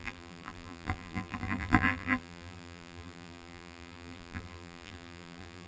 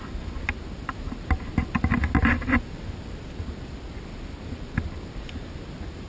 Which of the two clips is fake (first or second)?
first